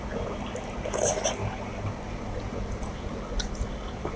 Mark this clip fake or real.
real